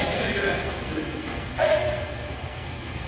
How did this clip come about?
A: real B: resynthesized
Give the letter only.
B